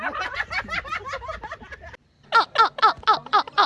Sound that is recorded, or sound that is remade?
recorded